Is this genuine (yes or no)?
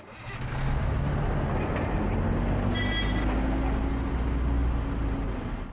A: yes